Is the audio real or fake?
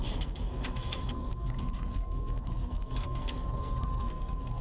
fake